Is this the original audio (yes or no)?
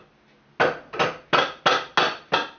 yes